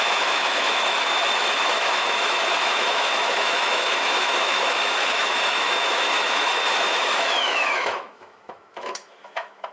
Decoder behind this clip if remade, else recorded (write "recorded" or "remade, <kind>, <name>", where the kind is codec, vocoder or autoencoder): remade, autoencoder, DAC-VAE